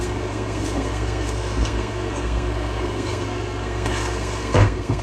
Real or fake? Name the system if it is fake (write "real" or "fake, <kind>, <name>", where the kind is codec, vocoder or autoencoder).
fake, codec, SNAC